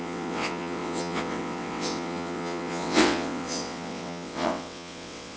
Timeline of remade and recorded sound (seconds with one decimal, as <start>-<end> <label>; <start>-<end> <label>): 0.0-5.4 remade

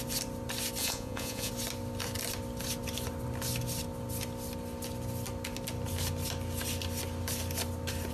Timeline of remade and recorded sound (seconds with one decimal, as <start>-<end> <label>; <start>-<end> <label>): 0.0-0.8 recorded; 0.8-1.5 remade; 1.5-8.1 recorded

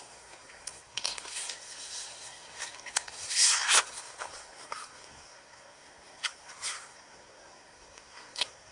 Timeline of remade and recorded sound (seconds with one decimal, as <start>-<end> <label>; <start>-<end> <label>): 0.0-8.7 remade

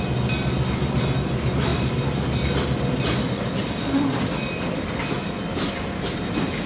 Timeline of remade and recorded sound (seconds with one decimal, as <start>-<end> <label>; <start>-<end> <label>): 0.0-6.7 recorded

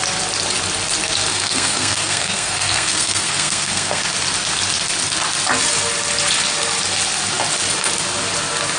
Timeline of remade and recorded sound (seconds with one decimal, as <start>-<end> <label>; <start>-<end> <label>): 0.0-1.3 recorded; 1.3-4.0 remade; 4.0-8.8 recorded

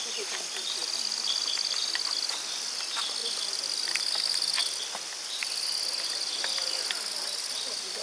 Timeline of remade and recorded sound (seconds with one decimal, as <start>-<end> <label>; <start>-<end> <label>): 0.0-8.0 recorded

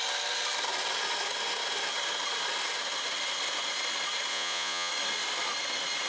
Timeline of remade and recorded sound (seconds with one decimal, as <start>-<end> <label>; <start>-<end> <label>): 0.0-4.3 recorded; 4.3-4.9 remade; 4.9-6.1 recorded